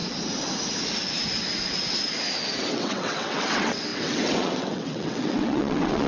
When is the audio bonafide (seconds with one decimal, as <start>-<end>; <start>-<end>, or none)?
0.0-2.7